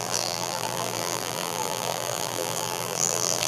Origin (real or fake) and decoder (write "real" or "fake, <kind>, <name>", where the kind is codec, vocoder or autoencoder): fake, vocoder, BigVGAN v2